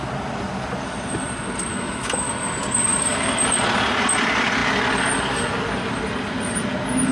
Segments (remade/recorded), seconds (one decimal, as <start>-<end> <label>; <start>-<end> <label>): 0.0-1.7 recorded; 1.7-2.3 remade; 2.3-7.1 recorded